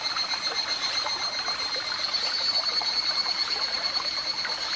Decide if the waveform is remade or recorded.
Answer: recorded